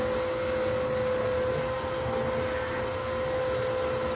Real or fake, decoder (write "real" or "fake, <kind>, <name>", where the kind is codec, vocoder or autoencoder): real